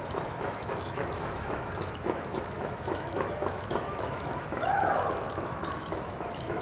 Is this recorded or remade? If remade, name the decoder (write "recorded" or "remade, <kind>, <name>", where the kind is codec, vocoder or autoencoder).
remade, autoencoder, DAC-VAE